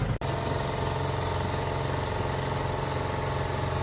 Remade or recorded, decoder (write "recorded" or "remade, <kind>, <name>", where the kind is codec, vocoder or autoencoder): recorded